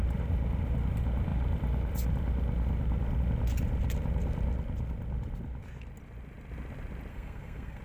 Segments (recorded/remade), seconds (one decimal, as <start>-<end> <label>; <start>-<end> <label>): 0.0-7.1 recorded; 7.1-7.8 remade